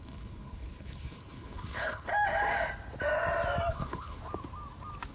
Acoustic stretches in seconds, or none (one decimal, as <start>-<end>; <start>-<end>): 2.1-3.7; 4.2-5.1